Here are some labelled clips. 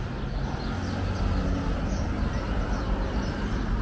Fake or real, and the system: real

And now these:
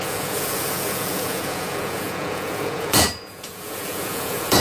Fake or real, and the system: fake, vocoder, Vocos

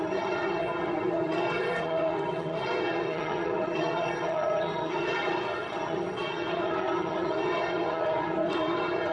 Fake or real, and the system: fake, vocoder, WaveNeXt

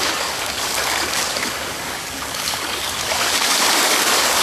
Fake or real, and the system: fake, codec, DAC